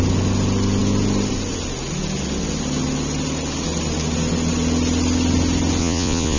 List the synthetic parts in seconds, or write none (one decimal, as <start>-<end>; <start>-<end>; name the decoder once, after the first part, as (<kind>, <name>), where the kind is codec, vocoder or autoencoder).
5.8-6.4 (vocoder, Vocos)